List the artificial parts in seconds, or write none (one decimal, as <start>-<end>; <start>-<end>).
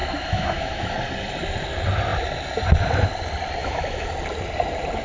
0.0-0.9; 3.6-4.1